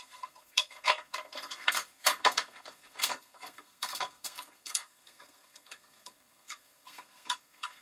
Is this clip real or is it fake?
fake